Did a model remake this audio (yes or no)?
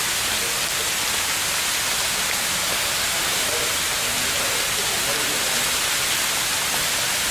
no